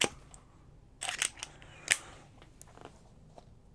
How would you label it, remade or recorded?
recorded